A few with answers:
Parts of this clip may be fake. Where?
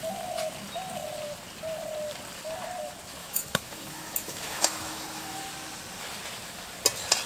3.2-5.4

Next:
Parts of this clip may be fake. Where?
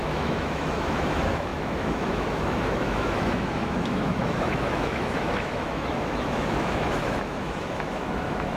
0.0-8.6